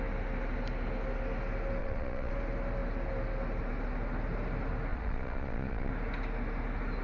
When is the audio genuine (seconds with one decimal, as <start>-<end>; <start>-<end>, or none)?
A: 0.0-1.8; 2.3-4.9; 5.9-7.0